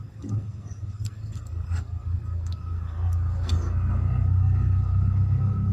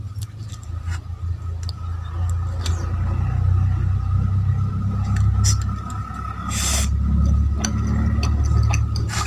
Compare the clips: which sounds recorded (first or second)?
second